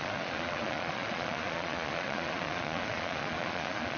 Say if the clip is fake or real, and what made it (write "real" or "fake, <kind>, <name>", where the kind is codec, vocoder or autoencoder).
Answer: fake, vocoder, Vocos